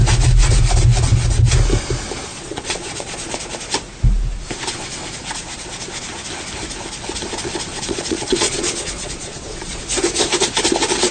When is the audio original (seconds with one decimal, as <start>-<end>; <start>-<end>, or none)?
0.0-2.3; 3.4-7.7; 9.8-11.1